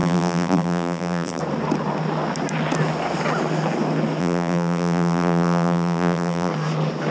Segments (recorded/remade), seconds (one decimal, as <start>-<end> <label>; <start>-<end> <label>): 0.0-1.4 remade; 1.4-4.2 recorded; 4.2-6.5 remade; 6.5-7.1 recorded